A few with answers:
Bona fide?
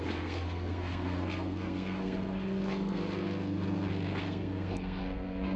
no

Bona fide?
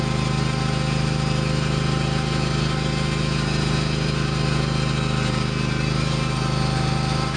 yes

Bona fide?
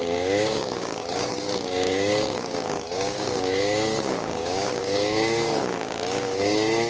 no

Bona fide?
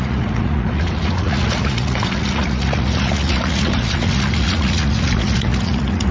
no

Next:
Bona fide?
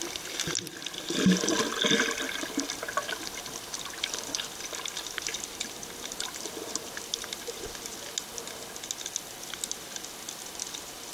yes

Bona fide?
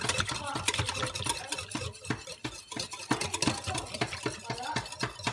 yes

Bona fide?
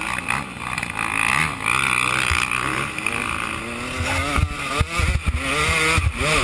yes